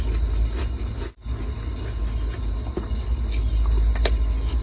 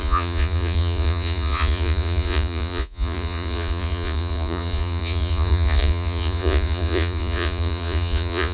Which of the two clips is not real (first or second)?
second